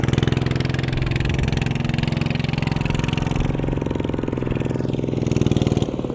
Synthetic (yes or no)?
no